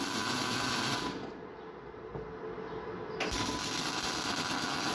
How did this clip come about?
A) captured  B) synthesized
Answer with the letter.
A